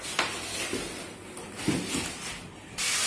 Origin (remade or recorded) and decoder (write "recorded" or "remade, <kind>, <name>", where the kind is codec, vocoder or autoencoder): recorded